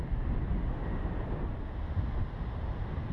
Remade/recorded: recorded